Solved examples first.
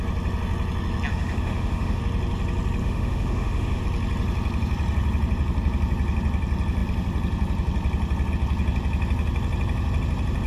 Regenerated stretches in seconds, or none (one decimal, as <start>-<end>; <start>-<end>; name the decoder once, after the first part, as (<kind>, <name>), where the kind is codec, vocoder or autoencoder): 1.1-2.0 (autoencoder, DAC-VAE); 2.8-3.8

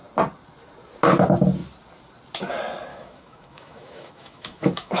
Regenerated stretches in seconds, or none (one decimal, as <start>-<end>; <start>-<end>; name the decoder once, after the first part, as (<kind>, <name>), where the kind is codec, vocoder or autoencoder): 2.9-5.0 (autoencoder, DAC-VAE)

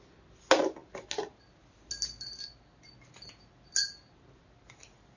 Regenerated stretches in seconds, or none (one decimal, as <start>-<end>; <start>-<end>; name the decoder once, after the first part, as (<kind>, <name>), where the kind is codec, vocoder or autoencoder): none